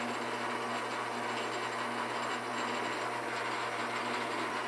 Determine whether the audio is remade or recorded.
recorded